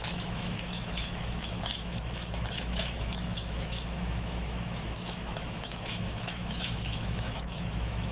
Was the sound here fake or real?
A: fake